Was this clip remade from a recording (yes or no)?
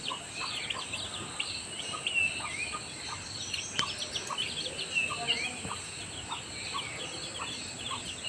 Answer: no